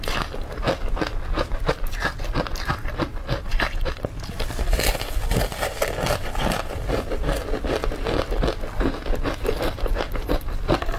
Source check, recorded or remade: recorded